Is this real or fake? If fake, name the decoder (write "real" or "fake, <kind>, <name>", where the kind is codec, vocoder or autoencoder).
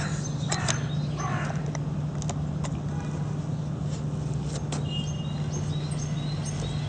real